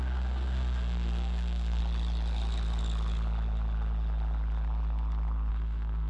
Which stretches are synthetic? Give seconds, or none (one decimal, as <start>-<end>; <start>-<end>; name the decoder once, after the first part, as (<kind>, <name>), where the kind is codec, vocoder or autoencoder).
0.0-1.8 (codec, SNAC); 5.5-6.1